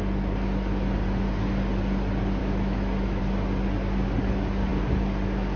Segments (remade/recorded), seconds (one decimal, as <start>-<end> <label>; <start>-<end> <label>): 0.0-2.4 recorded; 2.4-3.2 remade; 3.2-5.6 recorded